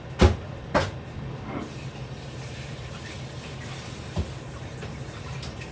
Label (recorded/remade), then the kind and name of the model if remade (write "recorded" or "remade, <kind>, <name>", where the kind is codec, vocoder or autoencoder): recorded